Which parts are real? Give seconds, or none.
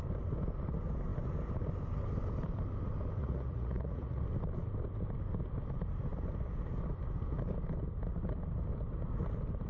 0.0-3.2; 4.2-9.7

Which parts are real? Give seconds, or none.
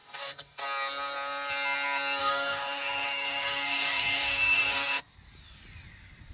0.6-2.2; 5.0-6.3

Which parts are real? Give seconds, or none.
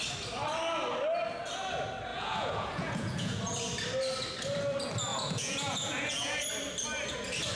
0.0-2.1; 3.4-5.1; 6.4-7.6